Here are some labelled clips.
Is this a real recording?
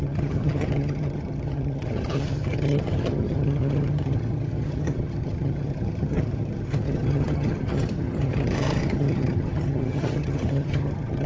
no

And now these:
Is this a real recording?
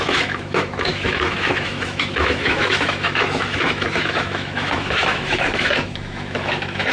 no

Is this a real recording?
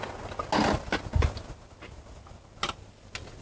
yes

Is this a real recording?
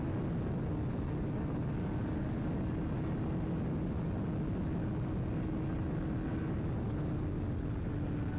yes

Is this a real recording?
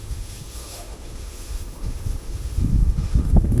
no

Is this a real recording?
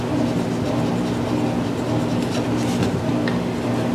yes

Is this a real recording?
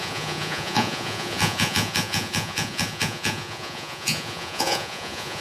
no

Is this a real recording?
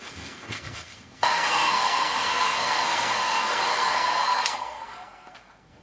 no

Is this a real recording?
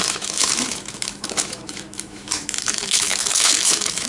no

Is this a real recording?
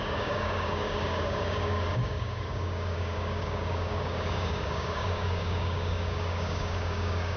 no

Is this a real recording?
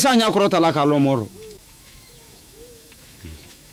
no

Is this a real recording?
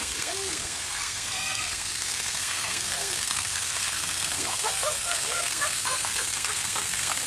no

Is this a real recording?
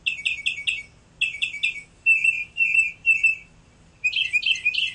yes